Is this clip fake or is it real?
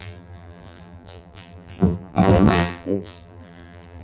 fake